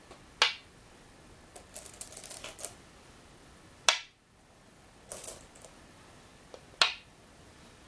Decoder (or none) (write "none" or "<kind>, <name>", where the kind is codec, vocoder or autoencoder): none